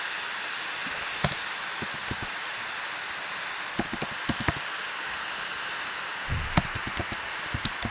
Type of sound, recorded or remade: recorded